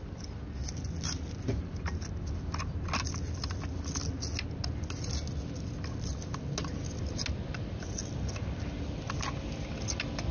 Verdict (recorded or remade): recorded